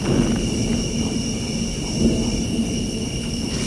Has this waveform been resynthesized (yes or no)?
no